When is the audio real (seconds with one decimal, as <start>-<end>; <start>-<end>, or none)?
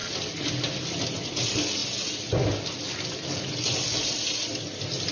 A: 0.0-5.1